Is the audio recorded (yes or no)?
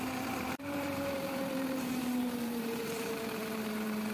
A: no